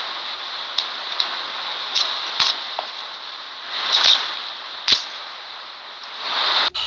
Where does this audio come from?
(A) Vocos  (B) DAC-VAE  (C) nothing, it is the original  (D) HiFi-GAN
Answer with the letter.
C